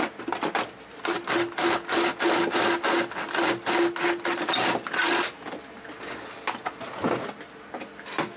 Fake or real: real